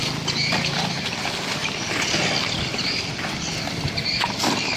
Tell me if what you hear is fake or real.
fake